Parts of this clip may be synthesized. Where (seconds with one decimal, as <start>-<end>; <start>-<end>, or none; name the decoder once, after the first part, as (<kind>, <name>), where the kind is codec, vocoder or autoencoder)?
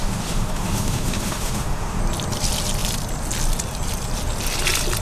0.0-2.0 (autoencoder, DAC-VAE)